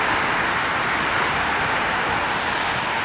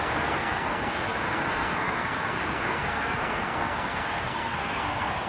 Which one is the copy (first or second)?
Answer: second